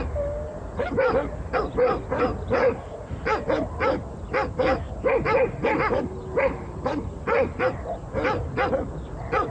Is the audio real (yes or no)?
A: yes